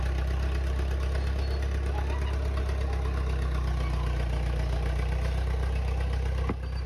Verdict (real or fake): real